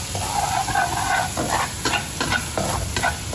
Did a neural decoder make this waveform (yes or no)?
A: no